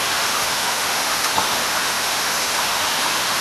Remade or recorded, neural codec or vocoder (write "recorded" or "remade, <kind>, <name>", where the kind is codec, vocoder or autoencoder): remade, autoencoder, DAC-VAE